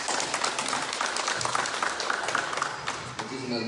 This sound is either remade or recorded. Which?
recorded